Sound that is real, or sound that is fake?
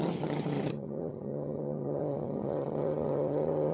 fake